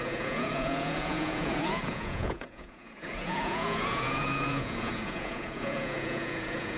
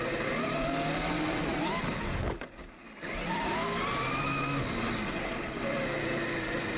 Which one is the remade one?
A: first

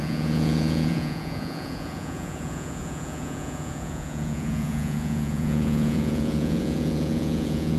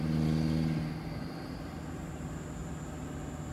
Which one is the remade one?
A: first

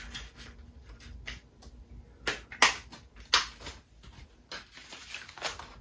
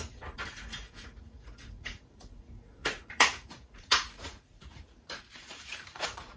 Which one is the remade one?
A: second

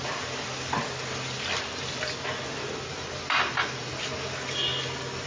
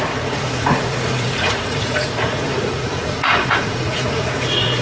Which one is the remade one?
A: second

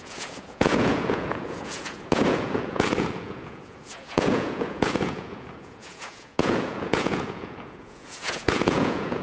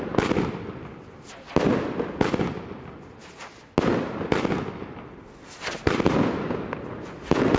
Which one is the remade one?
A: first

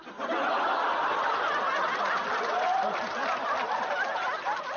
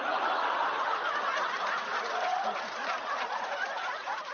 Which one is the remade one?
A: second